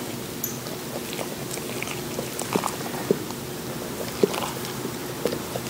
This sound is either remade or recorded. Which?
recorded